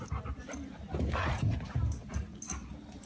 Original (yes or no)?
yes